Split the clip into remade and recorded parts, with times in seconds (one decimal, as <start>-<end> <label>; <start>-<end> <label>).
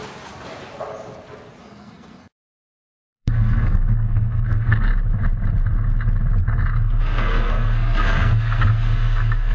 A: 0.0-1.6 recorded; 1.6-4.9 remade; 4.9-7.0 recorded; 7.0-9.5 remade